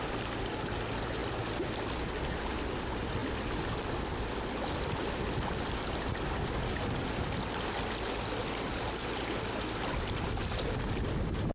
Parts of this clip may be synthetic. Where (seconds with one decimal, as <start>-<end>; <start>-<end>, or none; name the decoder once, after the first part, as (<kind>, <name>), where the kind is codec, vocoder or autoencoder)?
none